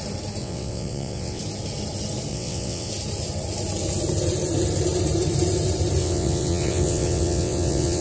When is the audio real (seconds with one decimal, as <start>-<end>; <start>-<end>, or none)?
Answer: 0.0-0.4; 1.4-2.3; 2.9-6.0